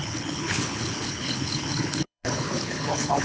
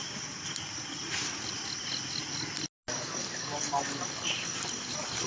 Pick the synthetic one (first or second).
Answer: first